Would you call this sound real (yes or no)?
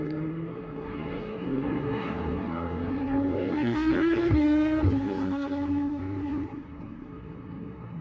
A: no